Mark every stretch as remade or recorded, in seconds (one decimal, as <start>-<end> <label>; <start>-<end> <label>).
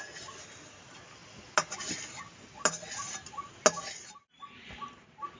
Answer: 0.0-5.4 recorded